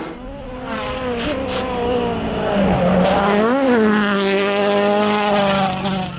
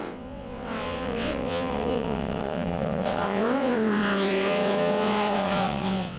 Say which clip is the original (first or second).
first